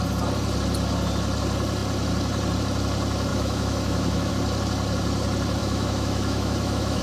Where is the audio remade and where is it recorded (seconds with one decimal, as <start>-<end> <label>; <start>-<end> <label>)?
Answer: 0.0-3.3 recorded; 3.3-4.3 remade; 4.3-5.6 recorded; 5.6-7.0 remade